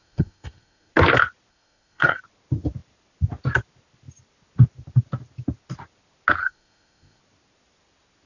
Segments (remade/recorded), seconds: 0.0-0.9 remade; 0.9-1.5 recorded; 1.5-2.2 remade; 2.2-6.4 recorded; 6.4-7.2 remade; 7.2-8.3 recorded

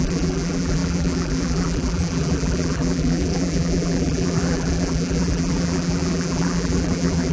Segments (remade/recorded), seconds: 0.0-7.3 remade

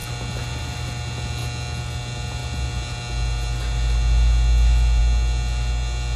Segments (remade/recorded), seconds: 0.0-6.2 recorded

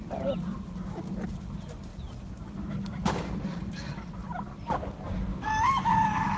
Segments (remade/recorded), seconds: 0.0-5.3 recorded; 5.3-5.9 remade; 5.9-6.4 recorded

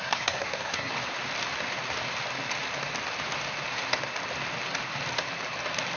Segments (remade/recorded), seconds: 0.0-0.9 remade; 0.9-6.0 recorded

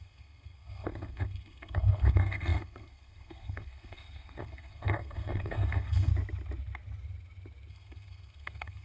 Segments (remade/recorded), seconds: 0.0-6.1 remade; 6.1-7.7 recorded; 7.7-8.8 remade

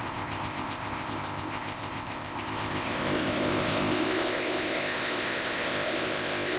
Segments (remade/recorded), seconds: 0.0-6.6 remade

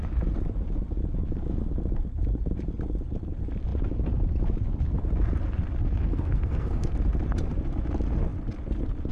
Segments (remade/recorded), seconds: 0.0-6.0 recorded; 6.0-7.0 remade; 7.0-9.1 recorded